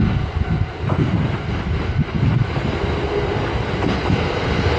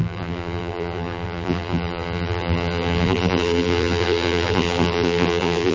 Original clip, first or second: first